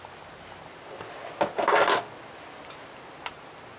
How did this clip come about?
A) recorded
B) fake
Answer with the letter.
A